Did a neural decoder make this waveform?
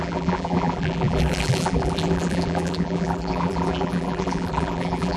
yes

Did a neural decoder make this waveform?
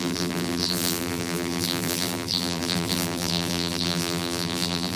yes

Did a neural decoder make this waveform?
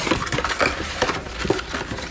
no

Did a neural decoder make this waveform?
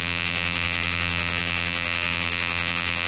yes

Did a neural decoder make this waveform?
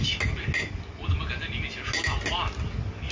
no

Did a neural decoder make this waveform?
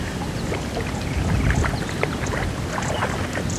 no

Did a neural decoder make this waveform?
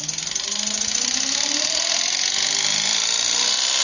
no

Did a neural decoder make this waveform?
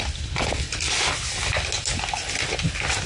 no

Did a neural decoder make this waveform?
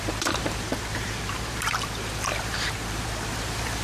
yes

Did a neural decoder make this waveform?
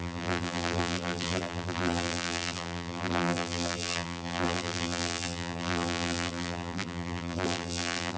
yes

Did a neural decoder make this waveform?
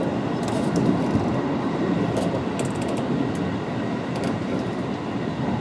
no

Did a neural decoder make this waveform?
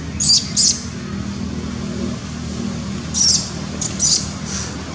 no